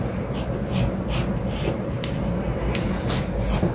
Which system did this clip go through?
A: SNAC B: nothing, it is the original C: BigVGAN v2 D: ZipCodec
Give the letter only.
B